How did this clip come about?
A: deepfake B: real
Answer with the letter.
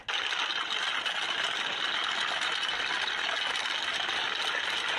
B